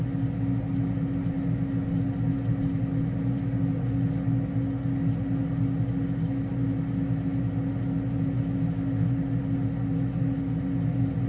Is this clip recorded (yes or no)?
yes